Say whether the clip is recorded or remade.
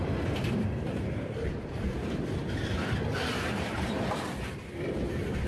remade